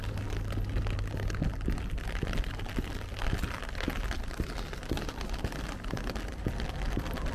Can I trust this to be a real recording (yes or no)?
yes